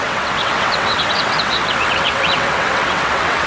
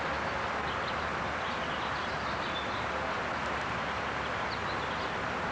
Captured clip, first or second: second